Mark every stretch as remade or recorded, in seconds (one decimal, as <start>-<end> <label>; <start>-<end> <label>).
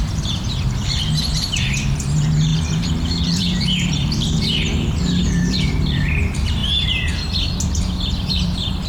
0.0-6.6 remade; 6.6-8.1 recorded; 8.1-8.9 remade